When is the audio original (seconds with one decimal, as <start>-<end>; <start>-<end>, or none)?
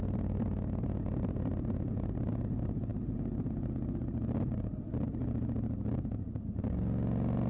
0.0-7.5